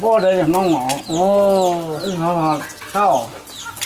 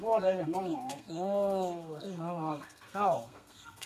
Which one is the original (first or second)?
first